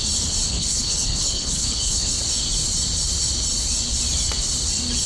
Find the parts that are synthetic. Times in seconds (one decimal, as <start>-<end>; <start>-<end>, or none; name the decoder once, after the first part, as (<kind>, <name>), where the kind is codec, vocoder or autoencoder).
0.5-2.1 (codec, HILCodec)